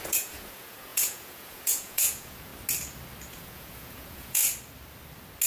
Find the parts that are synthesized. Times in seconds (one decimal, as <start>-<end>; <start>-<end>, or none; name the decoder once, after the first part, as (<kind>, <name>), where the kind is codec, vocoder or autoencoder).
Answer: 0.0-2.5 (vocoder, Vocos); 3.3-4.4